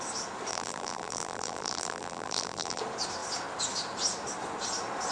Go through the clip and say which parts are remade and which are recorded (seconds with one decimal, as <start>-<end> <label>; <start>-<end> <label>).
0.0-0.5 recorded; 0.5-2.8 remade; 2.8-5.1 recorded